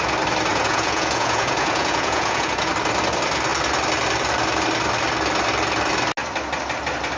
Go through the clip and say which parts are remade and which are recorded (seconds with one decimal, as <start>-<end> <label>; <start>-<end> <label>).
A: 0.0-0.5 recorded; 0.5-2.7 remade; 2.7-7.2 recorded